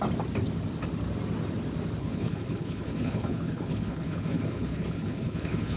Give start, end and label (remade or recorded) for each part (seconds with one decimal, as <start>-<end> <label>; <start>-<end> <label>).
0.0-2.0 recorded; 2.0-5.8 remade